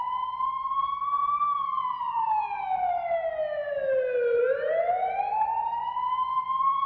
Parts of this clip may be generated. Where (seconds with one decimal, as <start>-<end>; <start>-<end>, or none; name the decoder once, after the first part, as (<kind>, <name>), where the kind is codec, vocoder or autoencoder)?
0.0-1.2 (vocoder, BigVGAN v2); 5.2-6.9

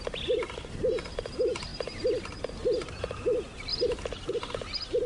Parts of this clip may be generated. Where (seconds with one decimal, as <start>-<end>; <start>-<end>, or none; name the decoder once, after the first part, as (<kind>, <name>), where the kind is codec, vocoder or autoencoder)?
3.7-4.3 (vocoder, BigVGAN v2)

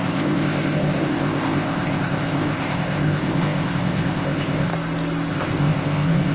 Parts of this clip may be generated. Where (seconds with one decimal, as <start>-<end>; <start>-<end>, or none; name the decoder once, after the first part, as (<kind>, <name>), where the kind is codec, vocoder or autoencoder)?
0.0-4.7 (codec, ZipCodec); 5.3-6.3

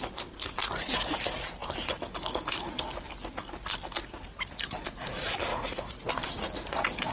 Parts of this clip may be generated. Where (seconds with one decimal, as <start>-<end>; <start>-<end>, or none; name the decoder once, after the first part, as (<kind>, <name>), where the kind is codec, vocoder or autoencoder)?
5.5-6.1 (vocoder, Vocos)